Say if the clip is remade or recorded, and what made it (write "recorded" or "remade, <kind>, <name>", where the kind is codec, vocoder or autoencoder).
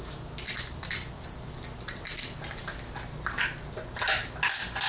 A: recorded